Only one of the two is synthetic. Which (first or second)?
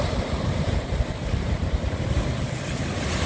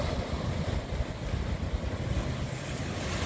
first